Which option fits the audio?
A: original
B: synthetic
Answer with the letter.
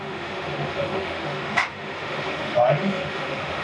B